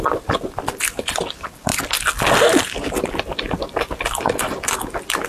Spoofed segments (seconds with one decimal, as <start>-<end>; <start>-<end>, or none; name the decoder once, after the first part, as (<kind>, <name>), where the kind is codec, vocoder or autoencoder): none